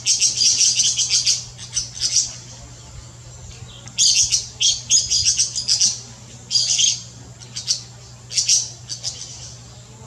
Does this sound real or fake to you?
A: real